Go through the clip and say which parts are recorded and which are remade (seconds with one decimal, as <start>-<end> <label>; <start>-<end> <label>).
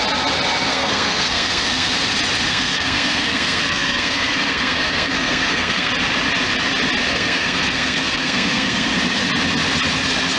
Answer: 0.0-0.7 recorded; 0.7-1.9 remade; 1.9-2.5 recorded; 2.5-5.9 remade; 5.9-7.1 recorded; 7.1-9.0 remade; 9.0-10.4 recorded